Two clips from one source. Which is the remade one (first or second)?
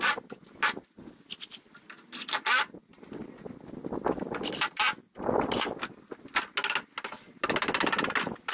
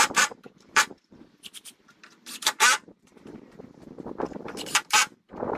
second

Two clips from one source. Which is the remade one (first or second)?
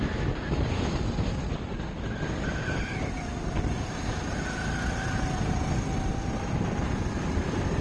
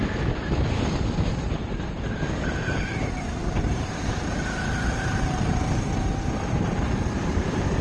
second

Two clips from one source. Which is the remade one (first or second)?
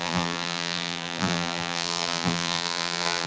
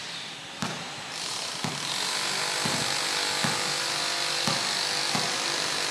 first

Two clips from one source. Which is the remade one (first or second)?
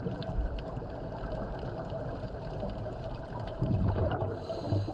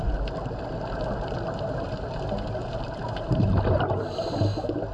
first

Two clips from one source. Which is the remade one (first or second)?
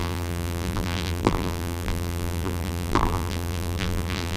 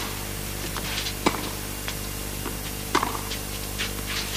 first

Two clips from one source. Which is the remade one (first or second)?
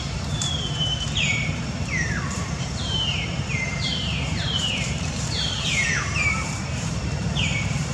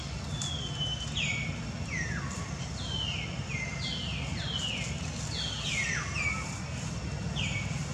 first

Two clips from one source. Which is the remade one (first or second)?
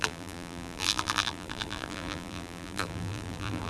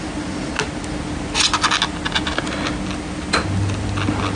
first